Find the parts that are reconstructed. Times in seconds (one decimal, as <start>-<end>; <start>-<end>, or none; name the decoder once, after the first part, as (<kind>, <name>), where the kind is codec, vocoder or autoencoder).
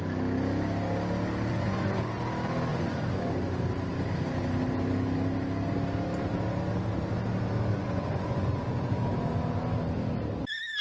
1.5-2.2 (vocoder, Vocos); 2.7-3.3; 7.7-9.0